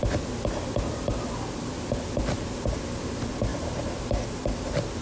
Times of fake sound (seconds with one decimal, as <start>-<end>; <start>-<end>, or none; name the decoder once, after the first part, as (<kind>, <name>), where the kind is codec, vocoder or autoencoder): none